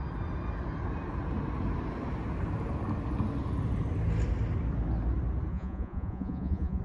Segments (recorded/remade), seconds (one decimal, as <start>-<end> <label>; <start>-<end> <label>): 0.0-5.5 recorded; 5.5-6.8 remade